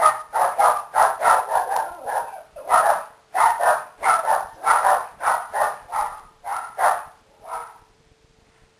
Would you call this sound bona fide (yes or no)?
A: no